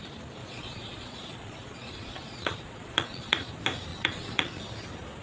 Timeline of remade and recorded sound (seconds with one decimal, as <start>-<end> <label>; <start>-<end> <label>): 0.0-0.4 recorded; 0.4-3.5 remade; 3.5-3.9 recorded; 3.9-4.6 remade; 4.6-5.2 recorded

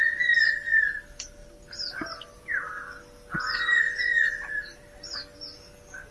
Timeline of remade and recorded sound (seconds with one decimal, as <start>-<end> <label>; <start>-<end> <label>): 0.0-6.1 recorded

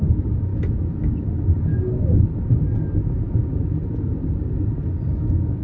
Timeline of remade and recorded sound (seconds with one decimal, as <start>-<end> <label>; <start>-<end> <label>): 0.0-0.5 remade; 0.5-1.2 recorded; 1.2-1.7 remade; 1.7-5.1 recorded; 5.1-5.6 remade

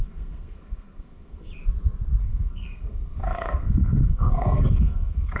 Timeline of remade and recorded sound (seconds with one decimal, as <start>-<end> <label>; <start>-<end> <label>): 0.0-1.5 remade; 1.5-2.2 recorded; 2.2-5.4 remade

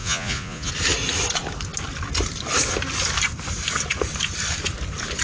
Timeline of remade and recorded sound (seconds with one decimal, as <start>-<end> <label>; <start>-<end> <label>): 0.0-0.7 remade; 0.7-5.2 recorded